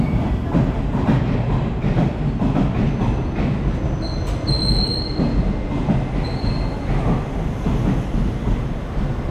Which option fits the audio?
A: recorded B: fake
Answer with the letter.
A